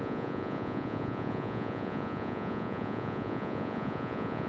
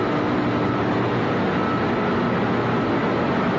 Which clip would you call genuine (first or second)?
second